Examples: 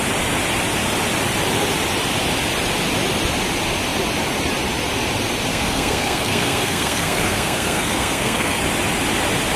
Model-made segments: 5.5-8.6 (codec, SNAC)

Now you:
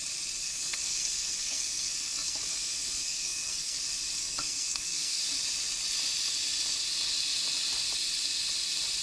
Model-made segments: 0.4-3.8 (codec, SNAC); 4.2-5.2